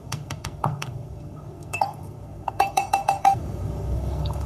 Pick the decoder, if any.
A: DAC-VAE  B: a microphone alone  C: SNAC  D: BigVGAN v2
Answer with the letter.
C